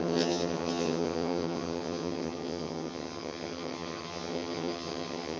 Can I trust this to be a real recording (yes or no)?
no